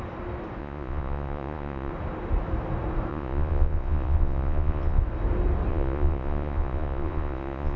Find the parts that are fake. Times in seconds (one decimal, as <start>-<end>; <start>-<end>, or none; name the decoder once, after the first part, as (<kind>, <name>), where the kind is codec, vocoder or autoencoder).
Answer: 0.6-1.9 (vocoder, Vocos); 3.1-5.0; 5.7-7.8

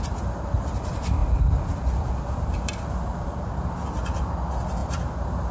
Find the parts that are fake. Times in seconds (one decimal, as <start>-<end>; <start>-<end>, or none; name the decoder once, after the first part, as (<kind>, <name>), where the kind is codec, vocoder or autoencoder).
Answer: none

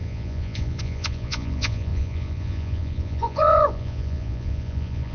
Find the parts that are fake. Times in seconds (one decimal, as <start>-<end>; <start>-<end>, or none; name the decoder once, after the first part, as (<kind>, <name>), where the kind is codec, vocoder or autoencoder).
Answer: 0.0-5.1 (vocoder, Vocos)

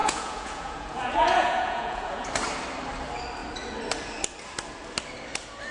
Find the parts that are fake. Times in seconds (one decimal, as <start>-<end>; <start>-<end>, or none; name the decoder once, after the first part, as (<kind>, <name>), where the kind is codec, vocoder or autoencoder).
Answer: 0.0-2.3 (vocoder, Vocos)

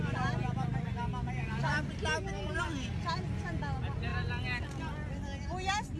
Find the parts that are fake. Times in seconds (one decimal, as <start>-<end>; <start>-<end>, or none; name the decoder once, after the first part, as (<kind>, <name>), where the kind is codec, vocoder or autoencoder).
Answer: none